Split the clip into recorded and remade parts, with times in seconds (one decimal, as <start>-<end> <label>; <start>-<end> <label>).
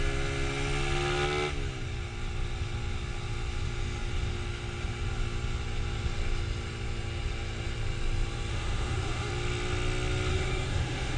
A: 0.0-8.5 recorded; 8.5-9.3 remade; 9.3-10.3 recorded; 10.3-11.2 remade